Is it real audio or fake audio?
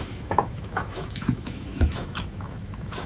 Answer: fake